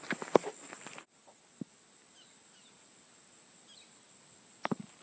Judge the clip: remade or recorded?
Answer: recorded